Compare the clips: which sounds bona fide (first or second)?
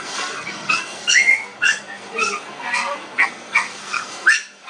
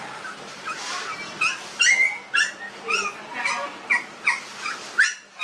second